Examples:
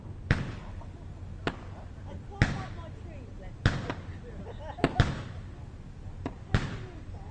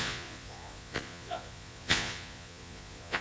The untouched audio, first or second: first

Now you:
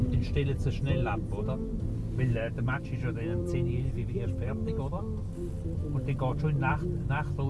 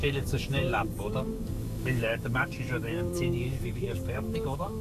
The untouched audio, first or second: first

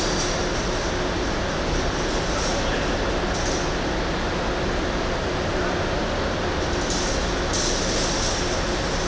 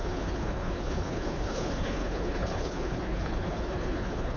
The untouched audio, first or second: first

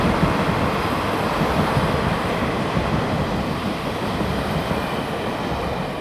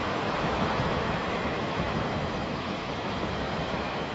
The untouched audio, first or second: first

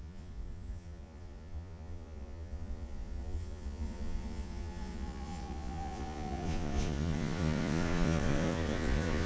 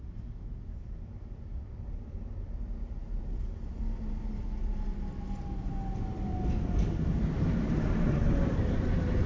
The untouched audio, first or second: second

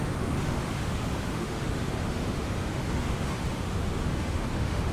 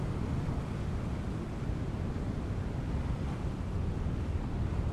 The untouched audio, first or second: second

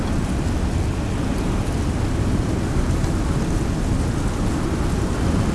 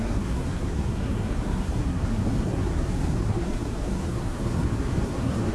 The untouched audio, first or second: first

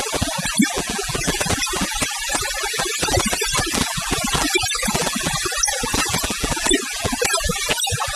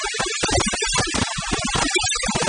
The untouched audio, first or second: second